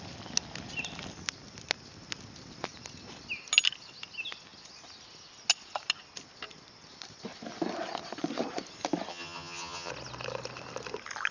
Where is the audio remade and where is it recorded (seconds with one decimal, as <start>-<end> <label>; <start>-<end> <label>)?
0.0-9.1 recorded; 9.1-9.9 remade; 9.9-11.3 recorded